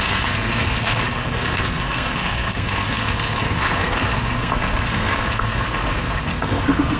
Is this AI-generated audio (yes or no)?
yes